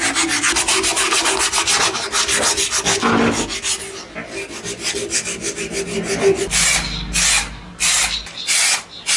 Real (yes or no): yes